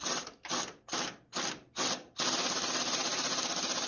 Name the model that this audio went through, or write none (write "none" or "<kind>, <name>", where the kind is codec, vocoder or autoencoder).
none